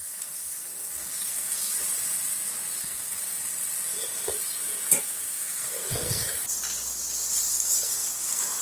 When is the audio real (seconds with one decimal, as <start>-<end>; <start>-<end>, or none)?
1.7-2.8; 3.4-5.0; 6.4-7.5